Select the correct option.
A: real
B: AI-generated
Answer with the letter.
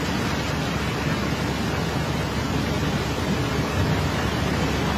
A